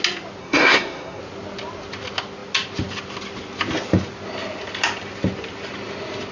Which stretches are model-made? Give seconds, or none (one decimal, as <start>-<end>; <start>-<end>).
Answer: 0.4-1.2